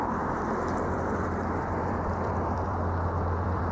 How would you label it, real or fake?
fake